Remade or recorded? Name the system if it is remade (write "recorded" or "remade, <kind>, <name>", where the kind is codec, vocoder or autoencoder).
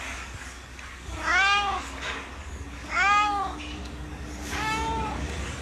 remade, codec, DAC